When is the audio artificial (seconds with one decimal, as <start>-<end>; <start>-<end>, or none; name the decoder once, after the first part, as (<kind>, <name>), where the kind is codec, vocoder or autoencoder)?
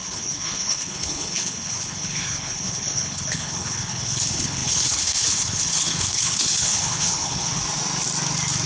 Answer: 0.0-7.6 (codec, HILCodec)